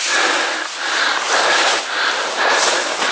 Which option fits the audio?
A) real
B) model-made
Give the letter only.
A